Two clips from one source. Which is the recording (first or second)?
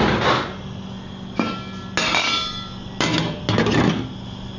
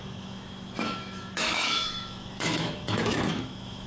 first